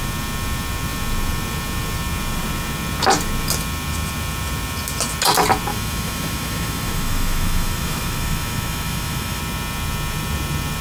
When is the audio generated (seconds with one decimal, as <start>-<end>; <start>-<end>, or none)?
5.7-9.4